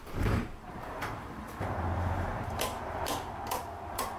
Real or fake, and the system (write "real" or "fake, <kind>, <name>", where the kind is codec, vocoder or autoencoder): fake, vocoder, BigVGAN v2